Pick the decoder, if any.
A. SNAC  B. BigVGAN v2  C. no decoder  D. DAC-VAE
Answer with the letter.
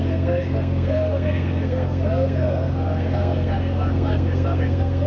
A